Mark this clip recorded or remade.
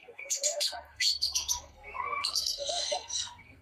remade